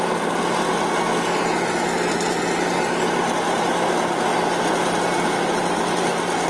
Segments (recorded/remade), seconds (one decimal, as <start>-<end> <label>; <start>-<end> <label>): 0.0-6.5 recorded